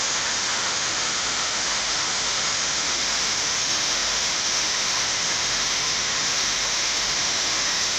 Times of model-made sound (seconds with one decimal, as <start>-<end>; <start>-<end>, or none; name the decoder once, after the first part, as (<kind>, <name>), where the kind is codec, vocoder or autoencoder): 0.0-8.0 (autoencoder, DAC-VAE)